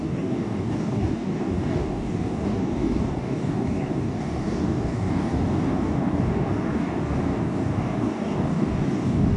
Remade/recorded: remade